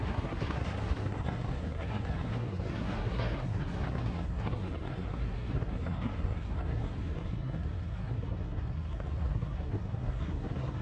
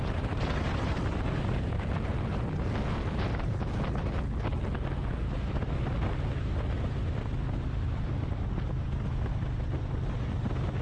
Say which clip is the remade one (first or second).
first